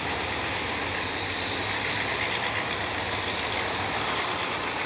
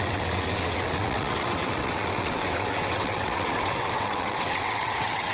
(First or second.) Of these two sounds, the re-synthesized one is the second